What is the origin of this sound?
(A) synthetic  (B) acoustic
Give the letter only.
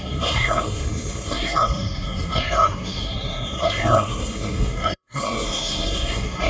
A